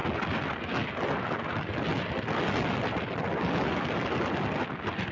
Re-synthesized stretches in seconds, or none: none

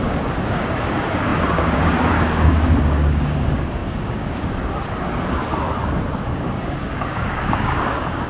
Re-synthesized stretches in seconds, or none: 0.0-5.4 (codec, DAC); 6.2-8.3

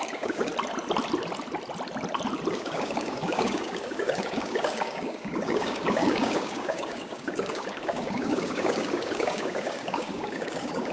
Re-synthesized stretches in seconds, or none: 0.0-0.5 (codec, DAC); 2.5-10.9

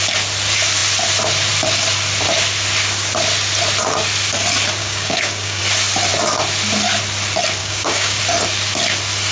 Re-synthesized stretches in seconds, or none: 4.8-5.6 (codec, DAC); 7.6-8.2